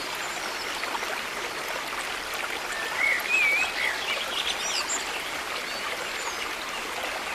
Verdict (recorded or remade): recorded